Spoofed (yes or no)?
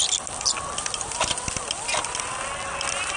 no